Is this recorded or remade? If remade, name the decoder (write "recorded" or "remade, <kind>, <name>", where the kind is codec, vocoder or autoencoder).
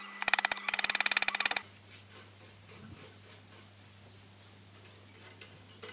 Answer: recorded